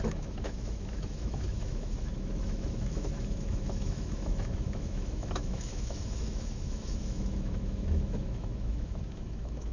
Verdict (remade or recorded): remade